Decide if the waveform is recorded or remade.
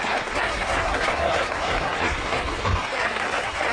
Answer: remade